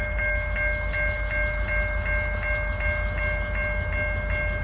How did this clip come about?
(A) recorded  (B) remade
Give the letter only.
A